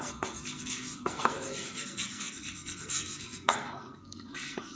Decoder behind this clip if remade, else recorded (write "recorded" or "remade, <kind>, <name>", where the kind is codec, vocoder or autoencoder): remade, codec, SNAC